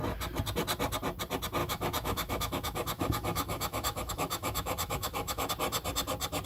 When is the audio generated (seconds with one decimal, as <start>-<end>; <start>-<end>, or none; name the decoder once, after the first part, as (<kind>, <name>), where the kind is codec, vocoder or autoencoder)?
1.6-5.5 (autoencoder, DAC-VAE)